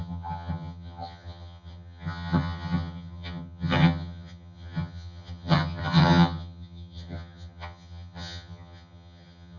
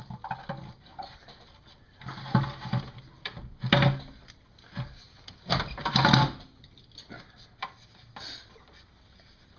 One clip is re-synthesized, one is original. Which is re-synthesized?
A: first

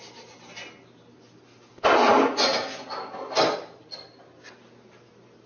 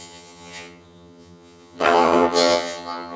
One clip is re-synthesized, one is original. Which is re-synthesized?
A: second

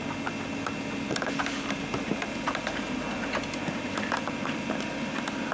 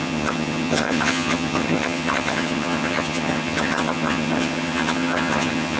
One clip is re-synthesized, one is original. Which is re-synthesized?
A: second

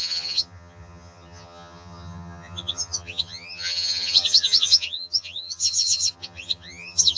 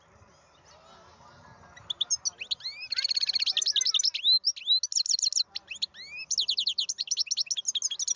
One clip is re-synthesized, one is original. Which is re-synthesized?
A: first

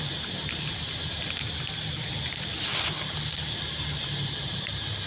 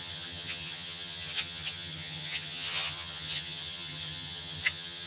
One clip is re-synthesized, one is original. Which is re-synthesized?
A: second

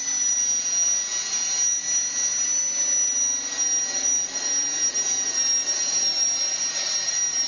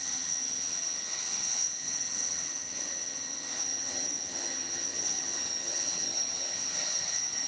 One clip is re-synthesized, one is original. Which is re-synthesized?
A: second